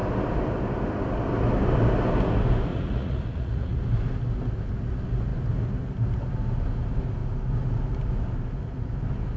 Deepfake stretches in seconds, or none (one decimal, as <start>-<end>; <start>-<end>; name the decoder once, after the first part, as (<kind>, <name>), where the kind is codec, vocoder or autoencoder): 2.7-3.8 (vocoder, Vocos)